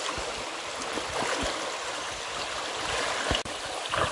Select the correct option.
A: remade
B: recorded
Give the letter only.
B